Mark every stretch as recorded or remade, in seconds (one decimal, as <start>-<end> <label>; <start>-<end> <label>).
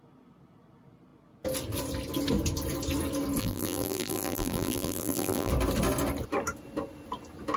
0.0-3.4 recorded; 3.4-5.5 remade; 5.5-7.6 recorded